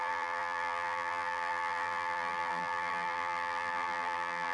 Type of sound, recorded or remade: remade